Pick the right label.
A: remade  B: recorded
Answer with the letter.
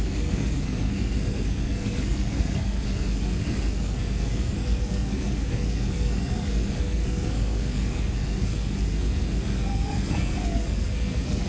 A